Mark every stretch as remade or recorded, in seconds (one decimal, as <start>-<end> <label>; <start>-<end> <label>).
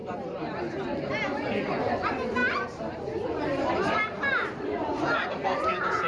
0.0-0.5 remade; 0.5-2.4 recorded; 2.4-6.1 remade